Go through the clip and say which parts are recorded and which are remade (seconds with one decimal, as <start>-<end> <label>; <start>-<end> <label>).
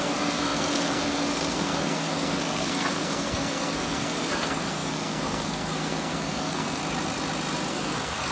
0.0-6.8 remade; 6.8-7.7 recorded; 7.7-8.3 remade